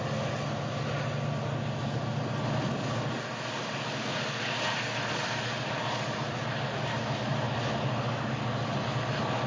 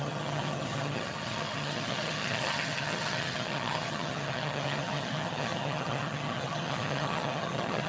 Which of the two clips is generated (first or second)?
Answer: second